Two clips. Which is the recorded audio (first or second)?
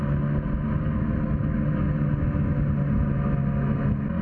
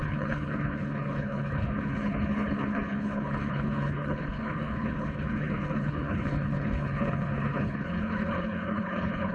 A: first